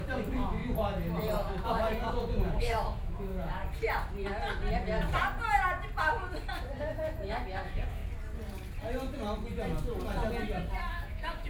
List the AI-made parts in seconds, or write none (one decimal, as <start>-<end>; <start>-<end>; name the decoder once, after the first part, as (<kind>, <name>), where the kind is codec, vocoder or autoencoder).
0.0-0.6 (autoencoder, DAC-VAE); 1.6-3.6; 6.8-8.0; 10.9-11.5